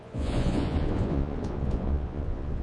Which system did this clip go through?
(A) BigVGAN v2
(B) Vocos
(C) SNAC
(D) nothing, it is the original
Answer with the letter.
B